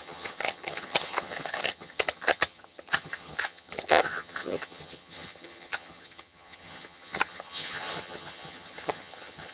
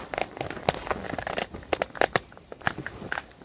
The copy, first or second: first